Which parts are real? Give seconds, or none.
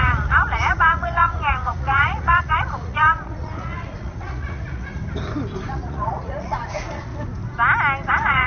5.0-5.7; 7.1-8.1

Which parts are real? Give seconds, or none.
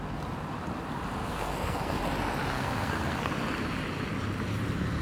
0.0-1.2; 2.0-2.5; 3.3-5.0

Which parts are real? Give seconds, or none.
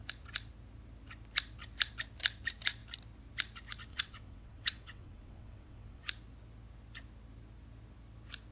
0.0-3.9; 6.0-8.5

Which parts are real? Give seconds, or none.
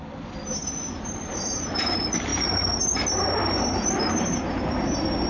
0.6-1.8; 2.3-3.4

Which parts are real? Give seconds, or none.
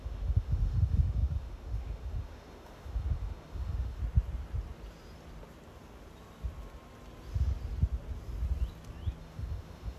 4.0-9.2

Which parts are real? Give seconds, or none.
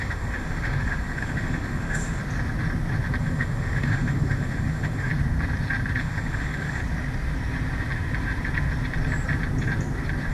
2.2-3.2; 5.1-6.0; 6.8-10.3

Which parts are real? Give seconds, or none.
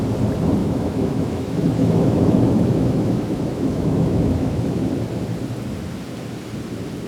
0.0-0.6; 4.9-7.1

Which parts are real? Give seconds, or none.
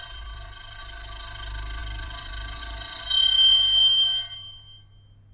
0.8-1.8; 2.6-3.1; 4.8-5.3